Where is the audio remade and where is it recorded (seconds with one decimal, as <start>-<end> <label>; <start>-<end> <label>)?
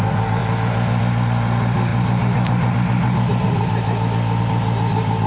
0.0-5.3 recorded